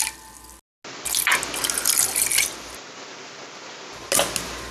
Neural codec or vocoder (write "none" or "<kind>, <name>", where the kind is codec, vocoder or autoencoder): none